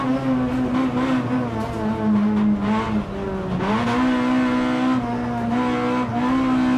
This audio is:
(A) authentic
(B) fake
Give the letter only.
A